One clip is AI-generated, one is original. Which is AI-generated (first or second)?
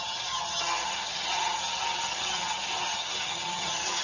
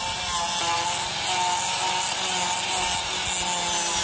first